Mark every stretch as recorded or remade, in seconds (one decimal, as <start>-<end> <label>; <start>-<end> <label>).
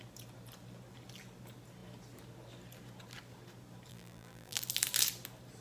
0.0-3.9 recorded; 3.9-4.6 remade; 4.6-5.6 recorded